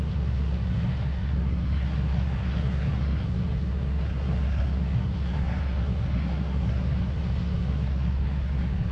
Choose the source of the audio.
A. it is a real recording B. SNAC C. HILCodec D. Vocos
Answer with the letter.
B